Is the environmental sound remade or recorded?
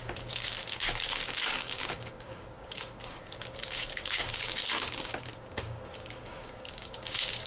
remade